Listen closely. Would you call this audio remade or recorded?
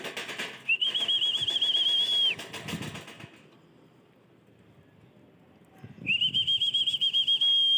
recorded